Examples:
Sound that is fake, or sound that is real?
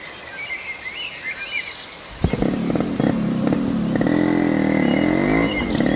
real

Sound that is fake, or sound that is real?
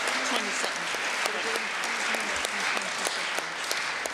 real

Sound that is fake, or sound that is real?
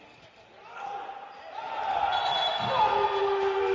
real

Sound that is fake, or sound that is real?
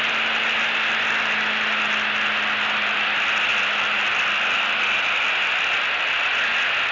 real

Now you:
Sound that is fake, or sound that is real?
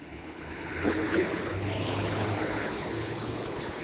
fake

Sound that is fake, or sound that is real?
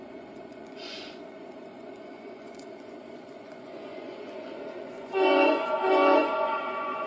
fake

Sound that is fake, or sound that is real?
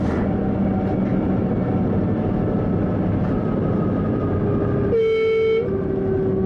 real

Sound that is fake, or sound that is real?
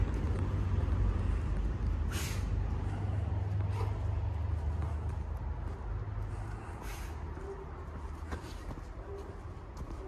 real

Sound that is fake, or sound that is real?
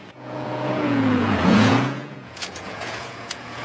fake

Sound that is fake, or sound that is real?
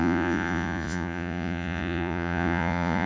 fake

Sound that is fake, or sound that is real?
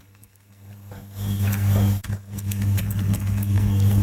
fake